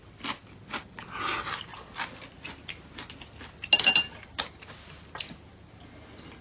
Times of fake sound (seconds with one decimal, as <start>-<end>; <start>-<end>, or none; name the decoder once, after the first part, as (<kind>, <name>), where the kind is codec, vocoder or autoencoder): none